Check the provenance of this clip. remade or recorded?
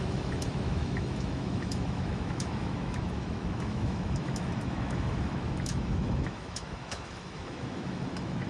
remade